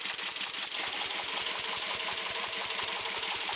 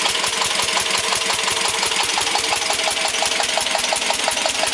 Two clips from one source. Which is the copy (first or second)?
first